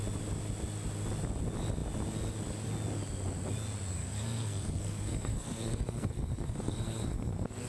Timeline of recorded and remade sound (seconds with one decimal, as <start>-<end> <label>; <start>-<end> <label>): 0.0-4.0 recorded; 4.0-7.7 remade